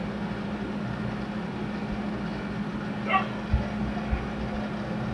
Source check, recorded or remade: recorded